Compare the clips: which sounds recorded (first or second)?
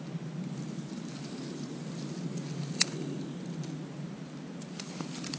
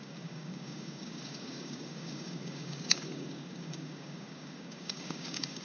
first